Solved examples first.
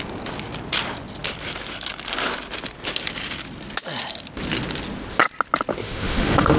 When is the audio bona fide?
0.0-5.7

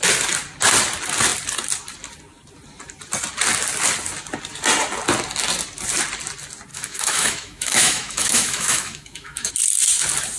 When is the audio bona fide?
0.0-6.7; 9.5-10.4

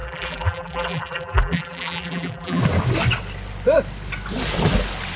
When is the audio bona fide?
2.6-5.2